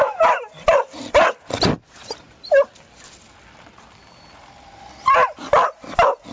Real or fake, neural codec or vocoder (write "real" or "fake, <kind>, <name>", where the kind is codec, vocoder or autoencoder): real